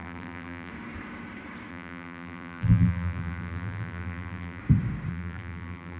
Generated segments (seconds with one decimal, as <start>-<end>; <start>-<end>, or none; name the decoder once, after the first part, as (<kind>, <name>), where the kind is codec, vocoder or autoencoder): 0.0-0.7 (vocoder, BigVGAN v2); 1.7-4.6; 5.1-6.0